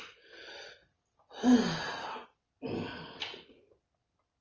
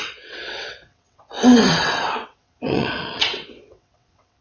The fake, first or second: second